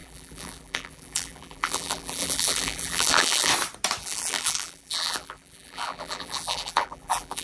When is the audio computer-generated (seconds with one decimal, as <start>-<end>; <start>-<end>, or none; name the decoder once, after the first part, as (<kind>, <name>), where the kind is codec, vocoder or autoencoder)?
0.0-3.5 (vocoder, BigVGAN v2); 4.0-7.4